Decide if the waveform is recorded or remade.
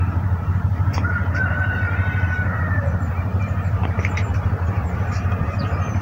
remade